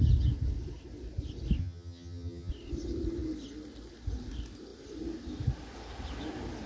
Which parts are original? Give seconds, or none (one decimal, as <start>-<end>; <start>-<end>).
0.0-1.6; 2.5-6.7